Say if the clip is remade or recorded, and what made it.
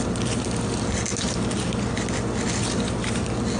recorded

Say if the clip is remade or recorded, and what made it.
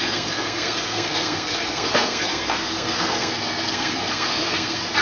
remade, codec, SNAC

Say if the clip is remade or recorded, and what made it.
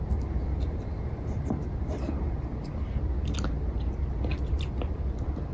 recorded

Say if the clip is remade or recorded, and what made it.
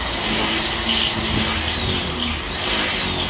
recorded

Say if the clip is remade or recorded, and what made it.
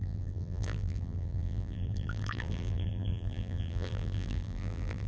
remade, vocoder, BigVGAN v2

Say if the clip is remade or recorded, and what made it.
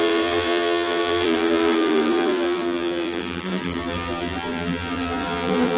remade, vocoder, BigVGAN v2